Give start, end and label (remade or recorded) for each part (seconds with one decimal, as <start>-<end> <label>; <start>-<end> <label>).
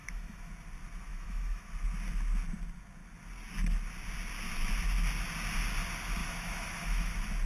0.0-0.5 remade; 0.5-1.1 recorded; 1.1-1.7 remade; 1.7-6.2 recorded; 6.2-7.1 remade; 7.1-7.5 recorded